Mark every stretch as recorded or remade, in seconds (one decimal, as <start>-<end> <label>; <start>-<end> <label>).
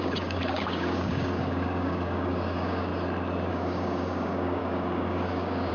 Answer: 0.0-2.9 remade; 2.9-3.5 recorded; 3.5-5.7 remade